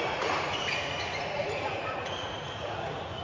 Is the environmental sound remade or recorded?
remade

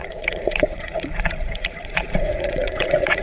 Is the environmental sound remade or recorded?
remade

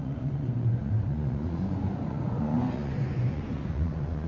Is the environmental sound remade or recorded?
remade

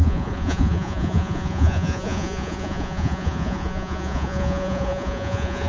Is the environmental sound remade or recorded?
remade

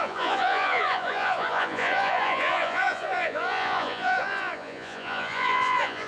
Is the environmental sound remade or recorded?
remade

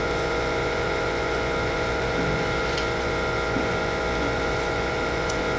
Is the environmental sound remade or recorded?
remade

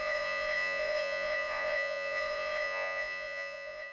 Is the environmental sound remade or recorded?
remade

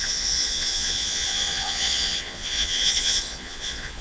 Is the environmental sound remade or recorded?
remade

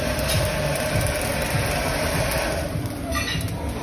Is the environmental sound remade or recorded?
recorded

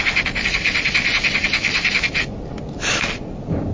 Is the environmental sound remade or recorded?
recorded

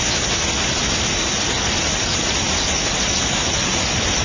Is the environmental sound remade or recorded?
recorded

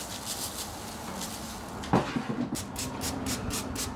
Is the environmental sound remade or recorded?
recorded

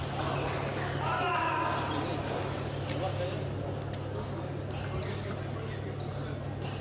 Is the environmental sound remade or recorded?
recorded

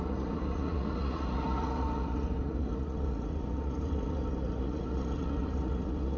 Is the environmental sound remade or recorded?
remade